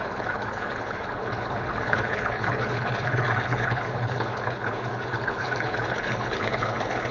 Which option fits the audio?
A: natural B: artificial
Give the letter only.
B